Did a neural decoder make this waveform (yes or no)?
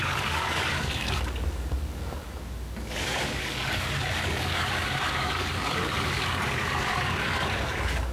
yes